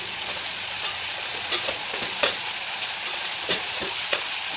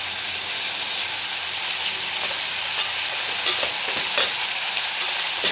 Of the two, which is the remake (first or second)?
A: first